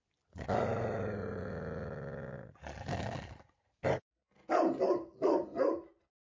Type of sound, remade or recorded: recorded